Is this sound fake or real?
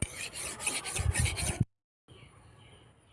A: real